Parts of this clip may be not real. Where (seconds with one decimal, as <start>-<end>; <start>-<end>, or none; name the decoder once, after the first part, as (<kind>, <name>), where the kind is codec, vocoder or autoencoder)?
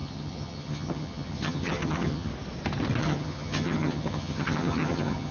0.0-2.3 (vocoder, HiFi-GAN); 3.0-5.3